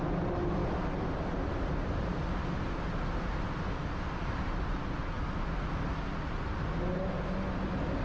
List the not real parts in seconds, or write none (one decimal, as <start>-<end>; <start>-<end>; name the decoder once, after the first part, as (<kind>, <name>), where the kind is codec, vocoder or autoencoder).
none